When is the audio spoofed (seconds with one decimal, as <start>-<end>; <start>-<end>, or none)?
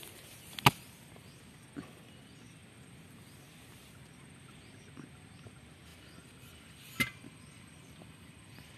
5.9-8.8